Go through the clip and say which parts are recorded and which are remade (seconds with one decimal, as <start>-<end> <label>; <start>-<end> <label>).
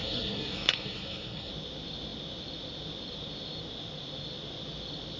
0.0-1.5 remade; 1.5-5.2 recorded